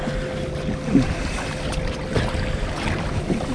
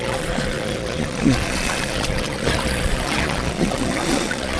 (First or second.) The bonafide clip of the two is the first